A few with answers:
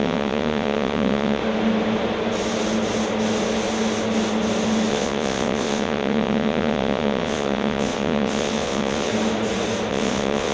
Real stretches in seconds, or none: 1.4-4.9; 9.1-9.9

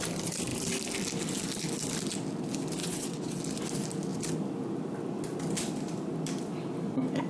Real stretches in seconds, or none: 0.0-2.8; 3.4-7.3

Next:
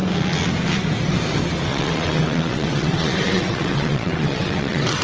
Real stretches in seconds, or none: 0.0-1.7

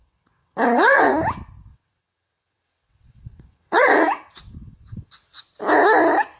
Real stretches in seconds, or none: 1.1-1.7; 5.4-6.4

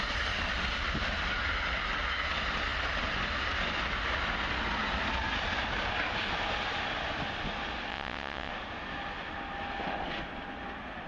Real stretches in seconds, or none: 0.0-7.9; 8.5-11.1

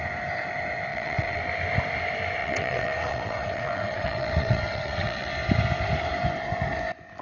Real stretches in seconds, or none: 0.0-0.9; 1.4-2.4; 5.3-7.2